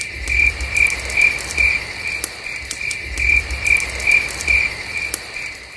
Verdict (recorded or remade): recorded